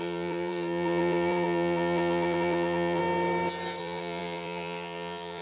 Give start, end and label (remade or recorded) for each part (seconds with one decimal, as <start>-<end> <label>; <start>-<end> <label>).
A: 0.0-3.0 remade; 3.0-3.8 recorded; 3.8-5.4 remade